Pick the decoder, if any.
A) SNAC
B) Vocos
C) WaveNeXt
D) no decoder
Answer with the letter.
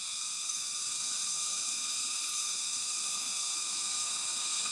A